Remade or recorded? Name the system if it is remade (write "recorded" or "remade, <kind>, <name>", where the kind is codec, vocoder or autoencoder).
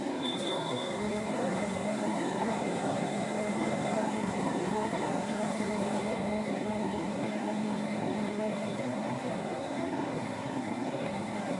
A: remade, codec, SNAC